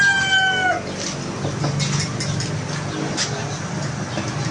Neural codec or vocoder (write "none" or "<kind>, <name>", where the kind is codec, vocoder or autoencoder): none